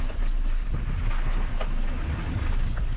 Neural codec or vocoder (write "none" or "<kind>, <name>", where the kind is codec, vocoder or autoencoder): none